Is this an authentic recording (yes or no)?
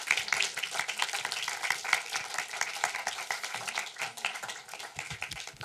yes